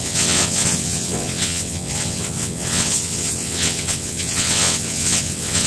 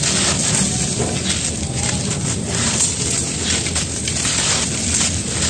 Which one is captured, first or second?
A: second